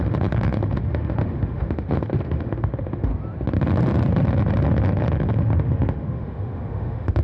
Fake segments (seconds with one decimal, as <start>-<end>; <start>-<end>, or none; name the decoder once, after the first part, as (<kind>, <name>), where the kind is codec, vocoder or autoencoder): 0.0-3.1 (autoencoder, DAC-VAE); 5.0-7.2

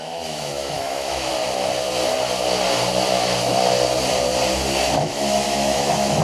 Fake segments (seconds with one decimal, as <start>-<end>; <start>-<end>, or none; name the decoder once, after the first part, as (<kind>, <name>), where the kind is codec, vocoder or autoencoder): 0.0-1.3 (autoencoder, DAC-VAE); 5.0-6.2

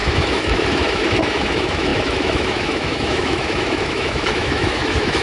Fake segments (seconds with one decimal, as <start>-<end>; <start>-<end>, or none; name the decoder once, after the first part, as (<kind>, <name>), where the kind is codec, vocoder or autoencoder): 0.0-5.2 (autoencoder, DAC-VAE)